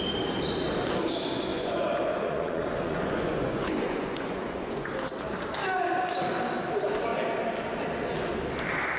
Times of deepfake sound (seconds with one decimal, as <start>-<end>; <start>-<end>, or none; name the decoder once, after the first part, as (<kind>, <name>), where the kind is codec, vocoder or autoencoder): 1.5-4.9 (vocoder, Vocos)